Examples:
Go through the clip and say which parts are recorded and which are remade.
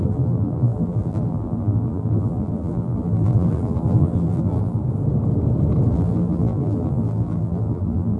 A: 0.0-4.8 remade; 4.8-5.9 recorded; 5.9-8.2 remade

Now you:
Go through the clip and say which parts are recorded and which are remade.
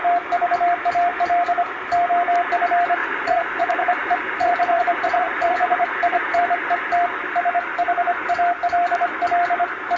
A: 0.0-3.0 recorded; 3.0-6.4 remade; 6.4-10.0 recorded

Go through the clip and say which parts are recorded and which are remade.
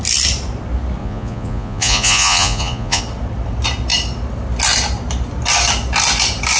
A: 0.0-1.0 recorded; 1.0-3.0 remade; 3.0-6.6 recorded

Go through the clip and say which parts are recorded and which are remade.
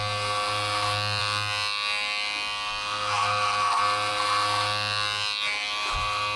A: 0.0-6.4 recorded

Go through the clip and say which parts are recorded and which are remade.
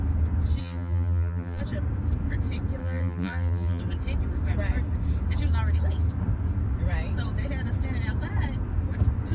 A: 0.0-0.6 recorded; 0.6-1.6 remade; 1.6-2.8 recorded; 2.8-3.8 remade; 3.8-9.3 recorded